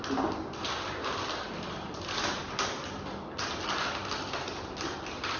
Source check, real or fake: real